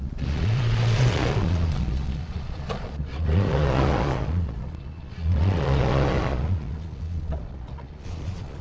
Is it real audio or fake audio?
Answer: fake